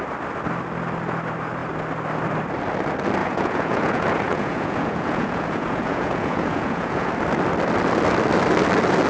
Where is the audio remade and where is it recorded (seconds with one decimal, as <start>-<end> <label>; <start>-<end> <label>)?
0.0-3.2 recorded; 3.2-7.1 remade; 7.1-9.1 recorded